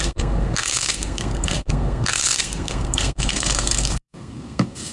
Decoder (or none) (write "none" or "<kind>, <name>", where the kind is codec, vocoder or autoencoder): codec, SNAC